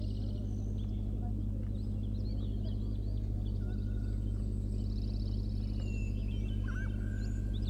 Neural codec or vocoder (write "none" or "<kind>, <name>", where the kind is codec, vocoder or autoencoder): none